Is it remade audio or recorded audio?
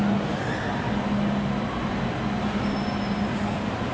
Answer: recorded